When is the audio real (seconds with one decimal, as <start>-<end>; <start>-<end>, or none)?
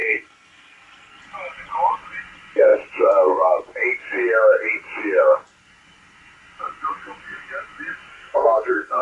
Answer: 1.2-8.1